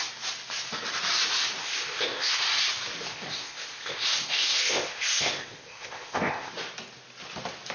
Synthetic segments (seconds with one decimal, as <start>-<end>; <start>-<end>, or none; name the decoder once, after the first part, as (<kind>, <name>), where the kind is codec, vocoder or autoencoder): 1.6-2.4 (codec, ZipCodec); 3.1-6.5